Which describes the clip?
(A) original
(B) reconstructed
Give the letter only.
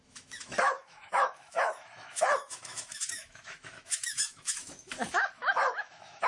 B